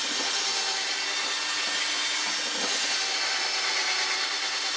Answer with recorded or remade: recorded